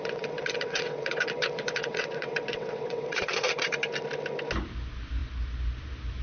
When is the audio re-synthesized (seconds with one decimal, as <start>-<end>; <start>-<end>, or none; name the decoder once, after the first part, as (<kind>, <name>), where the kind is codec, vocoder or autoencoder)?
0.0-3.7 (vocoder, WaveNeXt)